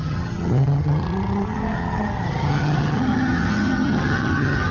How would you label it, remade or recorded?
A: remade